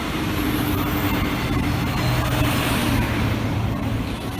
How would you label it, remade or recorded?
recorded